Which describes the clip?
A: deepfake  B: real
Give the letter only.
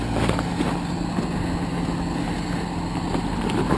B